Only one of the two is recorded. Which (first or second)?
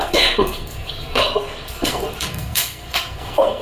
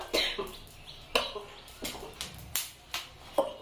second